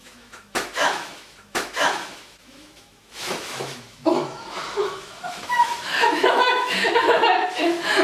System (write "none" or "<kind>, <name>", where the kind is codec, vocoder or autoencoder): autoencoder, DAC-VAE